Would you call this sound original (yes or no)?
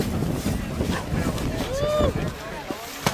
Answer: yes